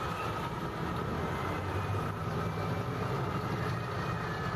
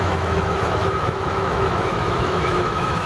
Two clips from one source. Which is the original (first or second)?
first